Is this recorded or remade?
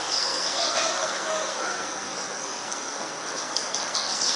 remade